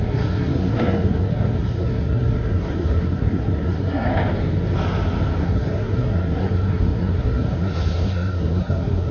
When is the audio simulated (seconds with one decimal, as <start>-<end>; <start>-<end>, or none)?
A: 0.0-4.1; 5.4-9.1